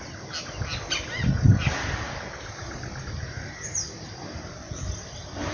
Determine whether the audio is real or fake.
real